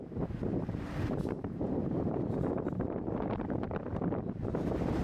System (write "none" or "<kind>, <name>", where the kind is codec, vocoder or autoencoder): vocoder, BigVGAN v2